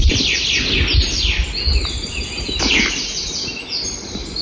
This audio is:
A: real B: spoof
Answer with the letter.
A